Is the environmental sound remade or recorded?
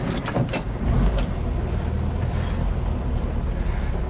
recorded